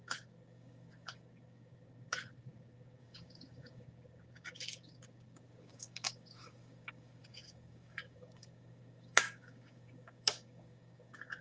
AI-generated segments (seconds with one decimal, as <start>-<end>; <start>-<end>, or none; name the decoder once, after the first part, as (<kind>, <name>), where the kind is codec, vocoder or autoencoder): 0.0-11.4 (codec, DAC)